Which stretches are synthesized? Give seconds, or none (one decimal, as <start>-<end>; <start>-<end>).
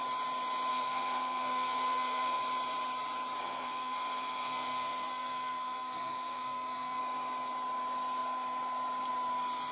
0.7-2.4; 3.4-7.0